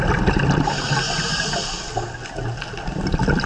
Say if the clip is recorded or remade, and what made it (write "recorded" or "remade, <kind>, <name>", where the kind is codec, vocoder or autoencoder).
recorded